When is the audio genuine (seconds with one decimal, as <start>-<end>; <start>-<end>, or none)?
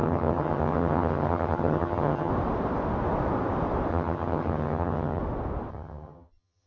2.3-3.9; 5.2-5.7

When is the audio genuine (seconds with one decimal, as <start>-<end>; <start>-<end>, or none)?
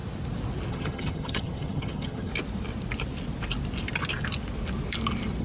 0.0-0.7; 2.3-5.4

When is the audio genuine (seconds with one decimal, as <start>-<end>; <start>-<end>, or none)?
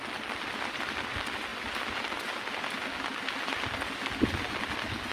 0.0-5.1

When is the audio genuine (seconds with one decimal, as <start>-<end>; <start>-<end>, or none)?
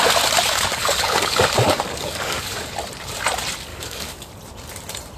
0.0-0.5; 2.7-3.7; 4.3-5.2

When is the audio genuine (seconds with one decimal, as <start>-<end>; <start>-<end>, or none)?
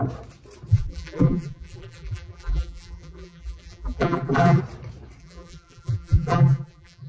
0.0-0.7; 4.6-5.2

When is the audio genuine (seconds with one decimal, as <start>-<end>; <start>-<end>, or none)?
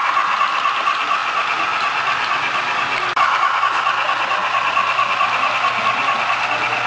0.0-6.9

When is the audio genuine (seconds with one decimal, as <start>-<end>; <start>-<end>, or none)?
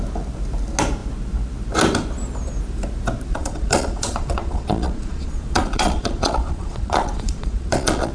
0.0-3.3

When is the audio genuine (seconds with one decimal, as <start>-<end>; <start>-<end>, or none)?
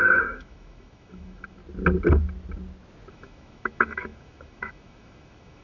1.6-3.1